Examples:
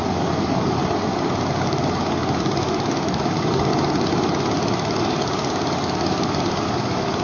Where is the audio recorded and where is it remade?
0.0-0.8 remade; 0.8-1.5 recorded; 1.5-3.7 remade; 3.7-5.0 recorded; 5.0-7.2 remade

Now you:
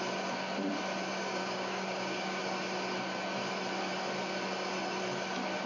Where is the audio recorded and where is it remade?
0.0-1.2 recorded; 1.2-2.4 remade; 2.4-5.7 recorded

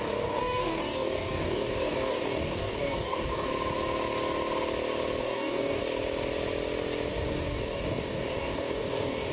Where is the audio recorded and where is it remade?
0.0-3.5 remade; 3.5-5.2 recorded; 5.2-5.8 remade; 5.8-7.1 recorded; 7.1-9.3 remade